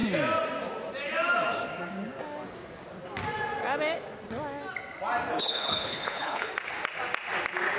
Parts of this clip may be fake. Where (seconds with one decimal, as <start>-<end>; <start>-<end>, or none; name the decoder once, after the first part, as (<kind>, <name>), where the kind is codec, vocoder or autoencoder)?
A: 5.3-6.5 (codec, HILCodec)